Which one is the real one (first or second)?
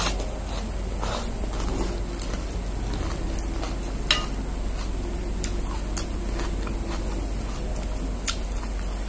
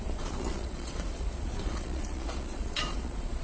first